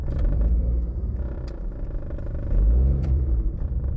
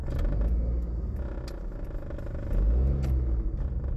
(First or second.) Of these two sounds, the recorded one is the second